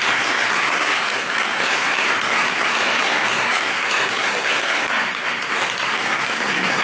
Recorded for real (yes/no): no